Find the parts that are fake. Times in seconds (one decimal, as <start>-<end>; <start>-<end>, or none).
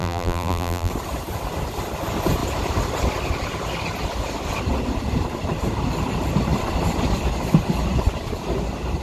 0.0-0.9